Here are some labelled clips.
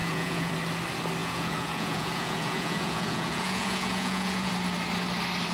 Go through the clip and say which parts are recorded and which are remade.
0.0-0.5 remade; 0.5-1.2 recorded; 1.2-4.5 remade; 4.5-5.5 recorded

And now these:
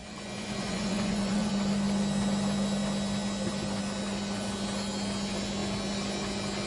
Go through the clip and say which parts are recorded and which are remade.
0.0-1.5 remade; 1.5-6.7 recorded

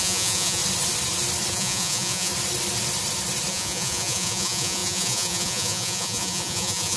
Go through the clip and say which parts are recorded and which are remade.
0.0-0.6 remade; 0.6-1.5 recorded; 1.5-2.3 remade; 2.3-3.5 recorded; 3.5-7.0 remade

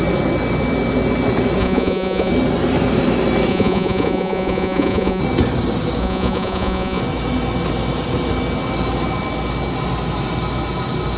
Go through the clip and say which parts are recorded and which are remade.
0.0-1.6 recorded; 1.6-2.3 remade; 2.3-3.5 recorded; 3.5-5.2 remade; 5.2-6.0 recorded; 6.0-7.0 remade; 7.0-11.2 recorded

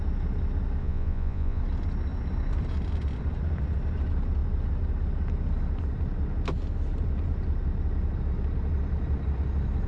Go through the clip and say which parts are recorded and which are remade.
0.0-0.8 recorded; 0.8-1.6 remade; 1.6-9.9 recorded

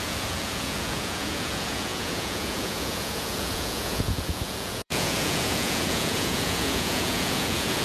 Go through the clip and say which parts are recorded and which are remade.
0.0-7.8 remade

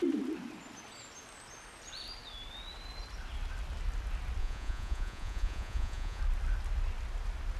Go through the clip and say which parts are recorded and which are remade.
0.0-4.4 recorded; 4.4-6.2 remade; 6.2-7.6 recorded

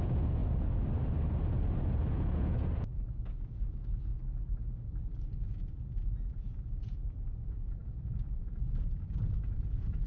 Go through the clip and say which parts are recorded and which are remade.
0.0-0.4 remade; 0.4-2.0 recorded; 2.0-4.1 remade; 4.1-5.3 recorded; 5.3-10.1 remade